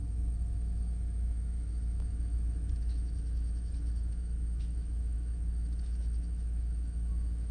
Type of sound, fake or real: fake